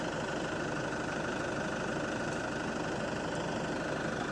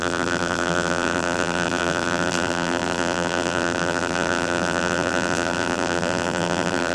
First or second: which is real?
first